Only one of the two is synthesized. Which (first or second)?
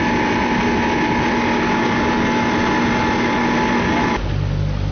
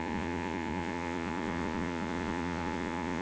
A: second